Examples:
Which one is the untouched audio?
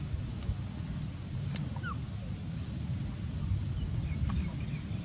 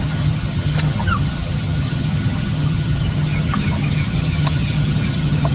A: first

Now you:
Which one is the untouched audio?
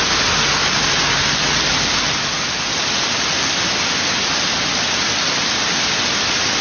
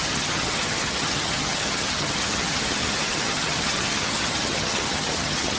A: first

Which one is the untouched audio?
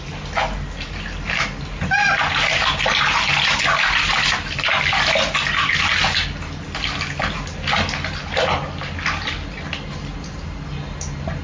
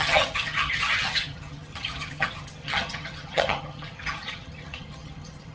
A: first